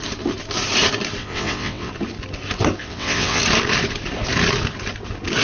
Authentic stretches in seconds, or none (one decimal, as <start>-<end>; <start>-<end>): 0.0-1.2; 1.9-2.8; 3.4-5.4